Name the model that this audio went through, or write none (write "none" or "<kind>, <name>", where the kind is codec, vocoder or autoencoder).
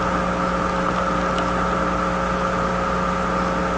none